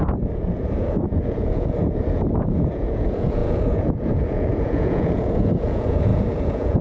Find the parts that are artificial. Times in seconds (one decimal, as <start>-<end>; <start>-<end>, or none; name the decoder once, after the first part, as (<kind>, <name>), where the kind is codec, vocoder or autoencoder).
0.0-6.8 (vocoder, Vocos)